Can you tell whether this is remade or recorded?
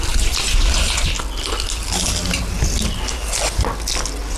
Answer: recorded